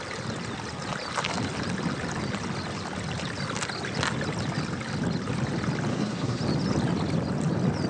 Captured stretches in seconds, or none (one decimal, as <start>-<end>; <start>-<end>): 0.0-5.9; 6.4-7.9